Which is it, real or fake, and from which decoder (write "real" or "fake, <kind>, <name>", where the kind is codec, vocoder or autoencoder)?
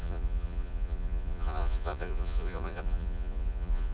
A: fake, vocoder, Vocos